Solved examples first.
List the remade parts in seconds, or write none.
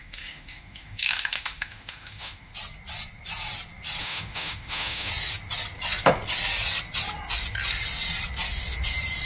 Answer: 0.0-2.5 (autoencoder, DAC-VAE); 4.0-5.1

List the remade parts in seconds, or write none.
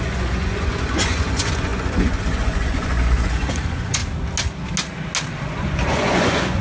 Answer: 0.0-4.0 (vocoder, Vocos); 5.4-6.6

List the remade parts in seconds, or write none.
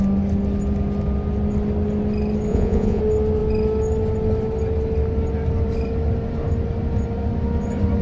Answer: 2.5-3.0 (vocoder, Vocos)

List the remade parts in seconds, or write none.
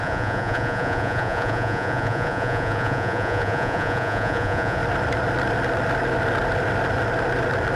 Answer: 0.0-4.8 (vocoder, Vocos)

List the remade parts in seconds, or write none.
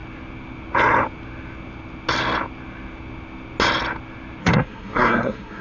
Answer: 4.4-5.6 (codec, SNAC)